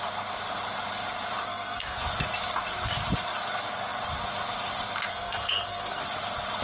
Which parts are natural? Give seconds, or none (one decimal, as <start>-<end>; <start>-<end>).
0.0-1.4; 2.0-5.1; 6.0-6.6